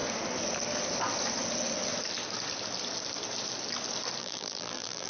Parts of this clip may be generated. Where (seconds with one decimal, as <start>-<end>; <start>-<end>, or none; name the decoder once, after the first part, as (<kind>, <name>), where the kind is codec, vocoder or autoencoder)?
4.2-5.1 (vocoder, BigVGAN v2)